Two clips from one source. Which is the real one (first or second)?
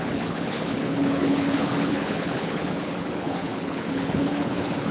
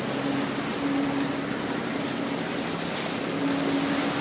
second